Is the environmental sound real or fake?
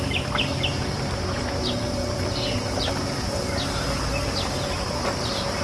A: real